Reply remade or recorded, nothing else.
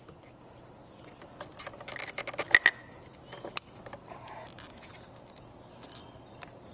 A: recorded